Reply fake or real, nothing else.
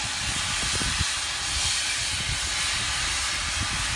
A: real